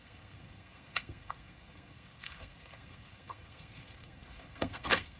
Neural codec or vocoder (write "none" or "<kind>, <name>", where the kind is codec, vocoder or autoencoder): codec, SNAC